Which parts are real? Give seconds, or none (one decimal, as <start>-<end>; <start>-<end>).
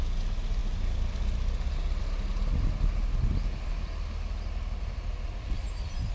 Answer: 0.0-6.1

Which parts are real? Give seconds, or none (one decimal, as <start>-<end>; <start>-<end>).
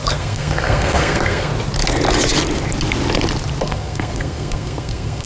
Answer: 1.5-3.6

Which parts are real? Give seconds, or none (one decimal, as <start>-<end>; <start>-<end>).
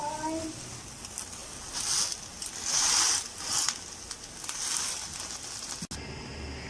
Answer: 0.0-6.7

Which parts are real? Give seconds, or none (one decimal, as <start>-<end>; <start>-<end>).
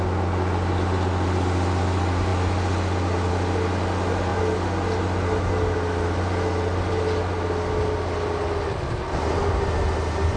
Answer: 0.0-10.4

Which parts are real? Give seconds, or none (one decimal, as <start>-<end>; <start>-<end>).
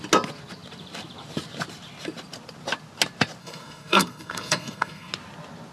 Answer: 0.0-3.4; 5.1-5.7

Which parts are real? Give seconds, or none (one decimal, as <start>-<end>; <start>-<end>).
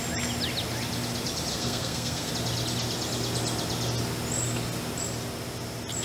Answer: 0.0-1.5; 2.3-6.0